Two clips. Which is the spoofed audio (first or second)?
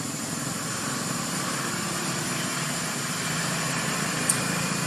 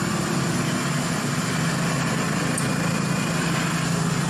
first